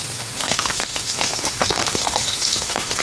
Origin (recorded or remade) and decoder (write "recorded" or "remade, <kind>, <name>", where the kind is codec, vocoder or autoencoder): remade, autoencoder, DAC-VAE